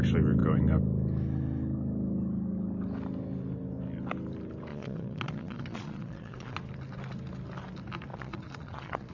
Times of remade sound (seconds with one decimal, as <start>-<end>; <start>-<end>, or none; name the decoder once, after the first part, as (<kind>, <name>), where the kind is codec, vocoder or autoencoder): 4.7-6.6 (vocoder, Vocos); 8.1-9.1